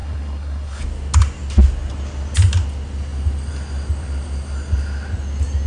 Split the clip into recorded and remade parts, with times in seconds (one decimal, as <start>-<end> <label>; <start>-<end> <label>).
0.0-0.8 remade; 0.8-5.7 recorded